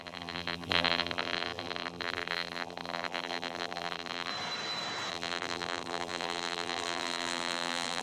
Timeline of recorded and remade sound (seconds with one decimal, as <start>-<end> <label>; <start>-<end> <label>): 0.0-4.3 remade; 4.3-5.1 recorded; 5.1-8.0 remade